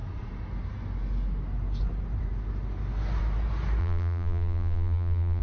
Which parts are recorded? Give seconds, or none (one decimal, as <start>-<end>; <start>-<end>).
0.0-3.8